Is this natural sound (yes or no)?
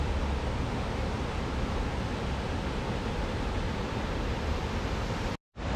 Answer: yes